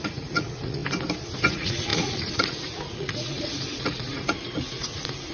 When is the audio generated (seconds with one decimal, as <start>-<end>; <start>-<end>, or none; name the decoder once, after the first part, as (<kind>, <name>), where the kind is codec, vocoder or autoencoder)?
0.0-0.8 (vocoder, Vocos); 1.5-5.3